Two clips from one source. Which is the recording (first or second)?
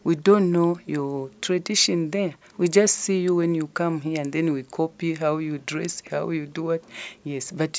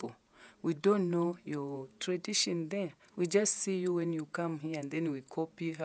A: first